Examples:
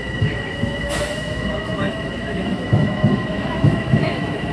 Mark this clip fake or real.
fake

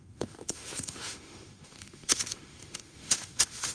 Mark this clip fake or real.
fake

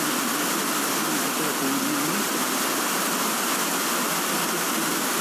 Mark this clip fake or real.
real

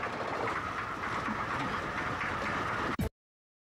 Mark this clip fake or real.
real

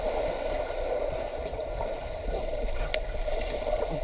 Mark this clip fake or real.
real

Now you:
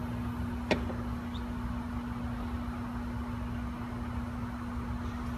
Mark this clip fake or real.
real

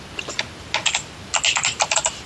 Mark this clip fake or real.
real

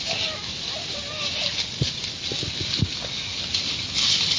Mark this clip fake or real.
real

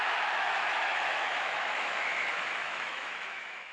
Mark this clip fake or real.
fake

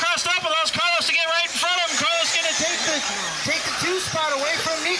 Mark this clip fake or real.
real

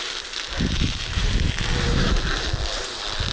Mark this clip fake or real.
real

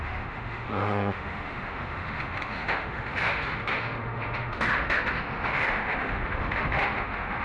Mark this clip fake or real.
fake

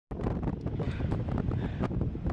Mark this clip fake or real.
real